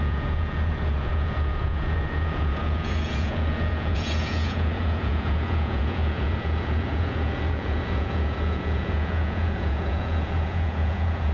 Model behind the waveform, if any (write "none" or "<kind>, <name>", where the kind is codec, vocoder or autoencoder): vocoder, Vocos